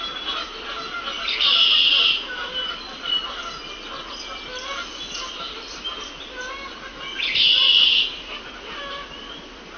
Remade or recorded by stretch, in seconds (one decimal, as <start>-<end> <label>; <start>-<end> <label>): 0.0-9.8 recorded